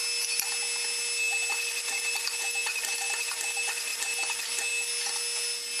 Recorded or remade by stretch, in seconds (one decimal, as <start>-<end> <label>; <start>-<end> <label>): 0.0-5.8 recorded